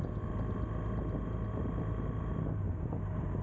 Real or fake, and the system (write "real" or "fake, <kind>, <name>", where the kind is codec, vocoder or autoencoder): real